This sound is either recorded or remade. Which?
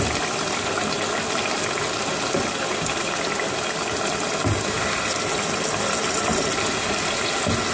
recorded